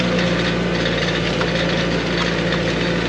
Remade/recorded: recorded